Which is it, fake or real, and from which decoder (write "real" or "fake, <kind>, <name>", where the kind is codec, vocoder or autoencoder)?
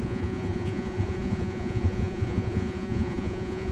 fake, vocoder, Vocos